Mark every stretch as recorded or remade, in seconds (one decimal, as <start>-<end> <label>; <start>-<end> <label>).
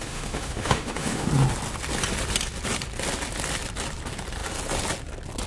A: 0.0-1.3 remade; 1.3-5.5 recorded